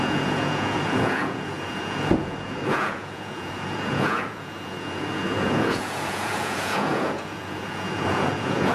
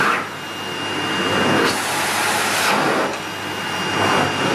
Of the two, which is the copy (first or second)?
first